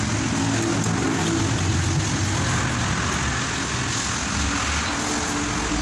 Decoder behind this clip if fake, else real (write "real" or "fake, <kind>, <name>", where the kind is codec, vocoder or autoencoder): real